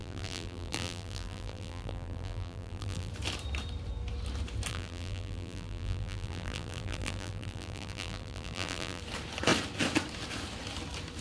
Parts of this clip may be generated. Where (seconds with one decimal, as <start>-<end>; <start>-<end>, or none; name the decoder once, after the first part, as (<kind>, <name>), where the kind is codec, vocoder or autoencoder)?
0.0-3.1 (vocoder, BigVGAN v2); 4.7-9.0

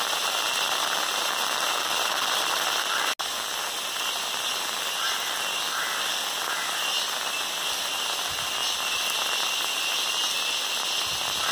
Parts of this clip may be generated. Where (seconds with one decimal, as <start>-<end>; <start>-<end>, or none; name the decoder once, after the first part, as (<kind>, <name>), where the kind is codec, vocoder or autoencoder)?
none

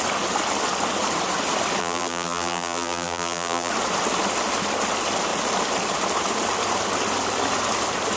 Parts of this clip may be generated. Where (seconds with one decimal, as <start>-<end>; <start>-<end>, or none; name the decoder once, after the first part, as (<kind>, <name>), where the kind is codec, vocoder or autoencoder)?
1.8-3.7 (vocoder, BigVGAN v2)

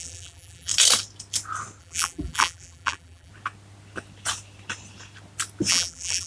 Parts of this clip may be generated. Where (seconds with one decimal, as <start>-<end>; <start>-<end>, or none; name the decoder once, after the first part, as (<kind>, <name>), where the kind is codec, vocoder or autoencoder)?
0.0-0.7 (vocoder, BigVGAN v2); 1.8-3.3; 5.7-6.3